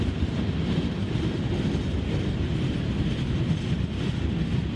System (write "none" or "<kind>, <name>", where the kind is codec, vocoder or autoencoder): none